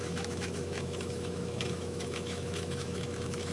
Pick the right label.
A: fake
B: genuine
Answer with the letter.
A